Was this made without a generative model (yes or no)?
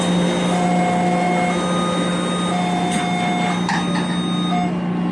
yes